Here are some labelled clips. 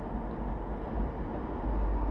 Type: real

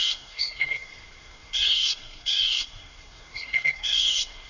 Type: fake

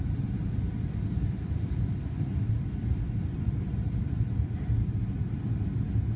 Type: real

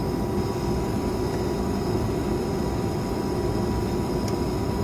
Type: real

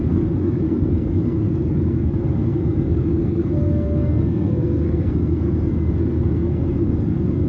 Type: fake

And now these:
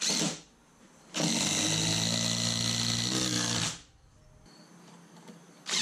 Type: real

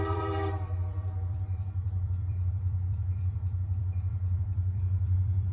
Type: fake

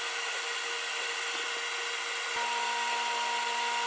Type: real